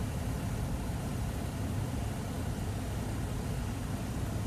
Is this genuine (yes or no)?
yes